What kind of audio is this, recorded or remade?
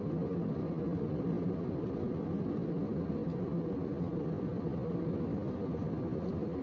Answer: recorded